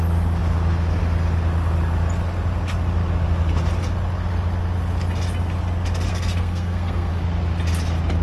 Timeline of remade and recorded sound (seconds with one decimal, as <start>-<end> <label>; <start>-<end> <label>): 0.0-6.1 recorded; 6.1-7.1 remade; 7.1-8.2 recorded